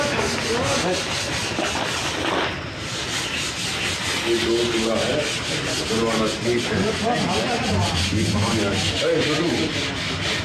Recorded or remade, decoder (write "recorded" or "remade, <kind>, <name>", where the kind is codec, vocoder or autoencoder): recorded